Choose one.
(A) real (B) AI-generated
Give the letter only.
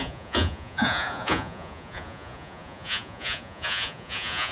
B